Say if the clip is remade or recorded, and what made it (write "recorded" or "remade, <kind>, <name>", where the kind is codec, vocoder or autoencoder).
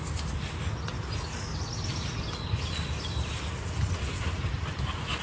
recorded